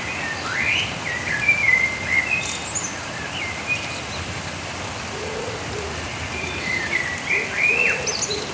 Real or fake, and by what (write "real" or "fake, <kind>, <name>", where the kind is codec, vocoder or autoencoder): real